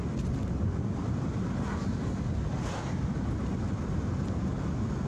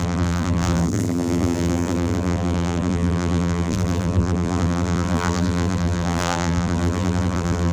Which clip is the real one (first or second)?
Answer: first